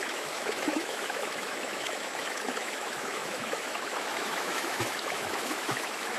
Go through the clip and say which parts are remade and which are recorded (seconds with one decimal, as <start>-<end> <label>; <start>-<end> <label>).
0.0-6.2 remade